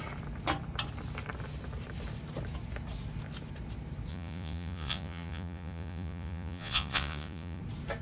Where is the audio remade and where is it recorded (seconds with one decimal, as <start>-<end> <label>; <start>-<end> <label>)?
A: 0.0-4.1 recorded; 4.1-7.6 remade; 7.6-8.0 recorded